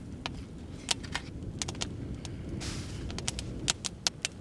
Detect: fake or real real